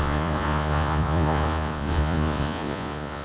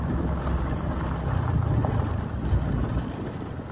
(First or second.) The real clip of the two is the second